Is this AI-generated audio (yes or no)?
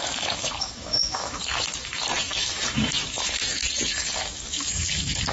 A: yes